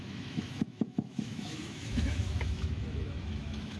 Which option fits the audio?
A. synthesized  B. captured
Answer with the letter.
A